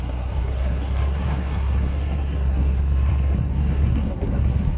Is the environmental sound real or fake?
fake